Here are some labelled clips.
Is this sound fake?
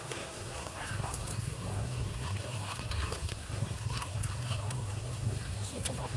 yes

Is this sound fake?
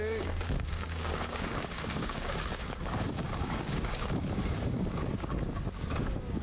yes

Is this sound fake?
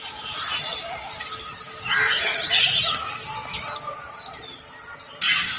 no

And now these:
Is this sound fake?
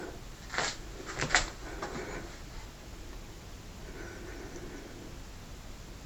no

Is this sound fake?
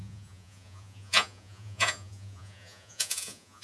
yes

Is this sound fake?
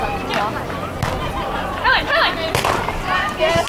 no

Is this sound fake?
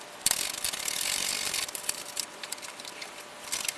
yes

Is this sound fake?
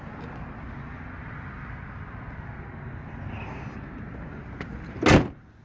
no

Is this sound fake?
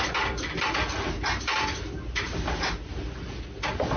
no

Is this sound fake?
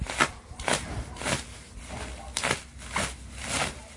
no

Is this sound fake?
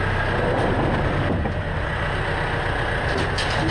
no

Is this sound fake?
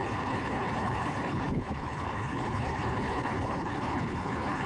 yes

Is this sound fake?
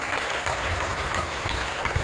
yes